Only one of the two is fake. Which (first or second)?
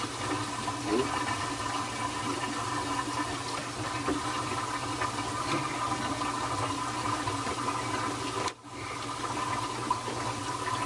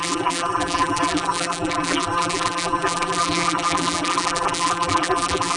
second